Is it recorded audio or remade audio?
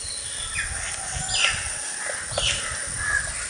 recorded